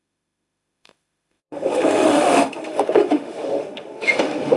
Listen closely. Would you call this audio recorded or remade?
remade